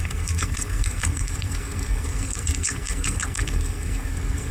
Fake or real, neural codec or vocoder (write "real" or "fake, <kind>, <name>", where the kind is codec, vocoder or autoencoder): fake, codec, SNAC